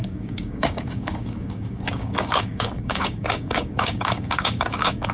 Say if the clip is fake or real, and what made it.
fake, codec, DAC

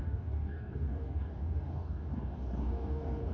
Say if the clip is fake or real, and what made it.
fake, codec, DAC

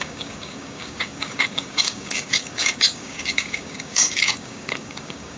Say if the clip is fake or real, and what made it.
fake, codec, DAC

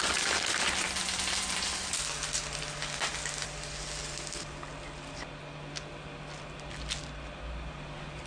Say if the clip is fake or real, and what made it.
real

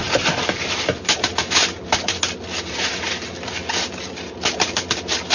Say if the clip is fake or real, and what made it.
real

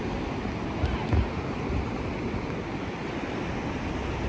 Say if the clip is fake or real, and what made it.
real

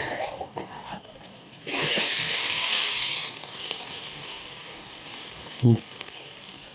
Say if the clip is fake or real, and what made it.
fake, codec, DAC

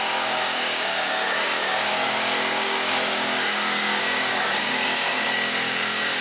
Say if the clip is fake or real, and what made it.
fake, codec, DAC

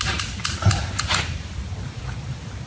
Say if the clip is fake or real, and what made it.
real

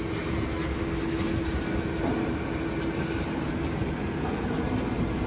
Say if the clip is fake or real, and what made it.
real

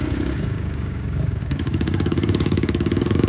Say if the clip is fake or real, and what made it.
fake, codec, DAC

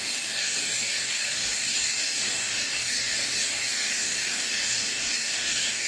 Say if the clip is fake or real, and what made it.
fake, codec, DAC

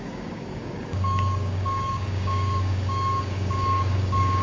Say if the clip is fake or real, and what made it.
fake, codec, DAC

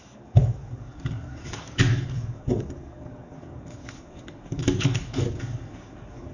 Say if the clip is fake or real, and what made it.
fake, codec, DAC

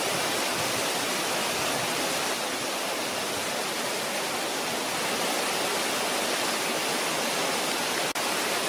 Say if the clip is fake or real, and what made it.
real